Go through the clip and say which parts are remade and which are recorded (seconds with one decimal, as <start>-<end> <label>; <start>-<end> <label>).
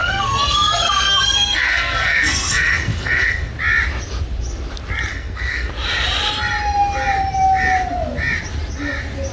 0.0-3.5 remade; 3.5-5.1 recorded; 5.1-5.7 remade; 5.7-9.3 recorded